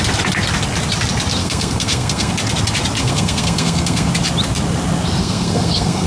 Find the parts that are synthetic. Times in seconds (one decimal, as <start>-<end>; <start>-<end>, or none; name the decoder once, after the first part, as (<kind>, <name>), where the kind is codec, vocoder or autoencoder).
1.4-2.3 (codec, SNAC); 3.0-4.1; 5.2-6.1